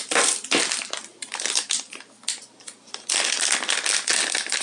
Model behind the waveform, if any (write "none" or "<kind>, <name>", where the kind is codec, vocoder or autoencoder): none